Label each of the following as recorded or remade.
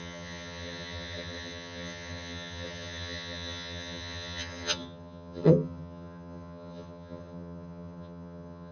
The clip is remade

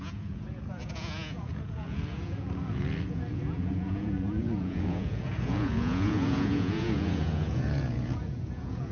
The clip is remade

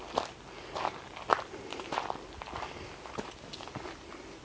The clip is recorded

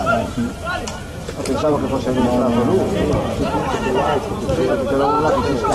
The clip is recorded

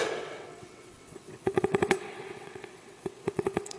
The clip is remade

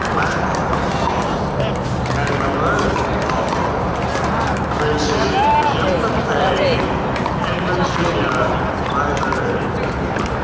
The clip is recorded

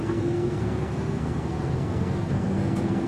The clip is remade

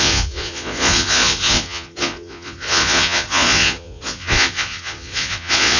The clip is remade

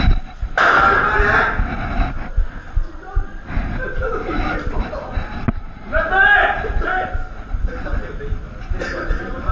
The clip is recorded